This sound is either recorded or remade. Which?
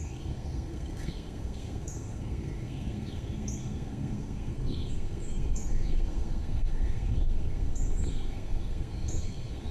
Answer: remade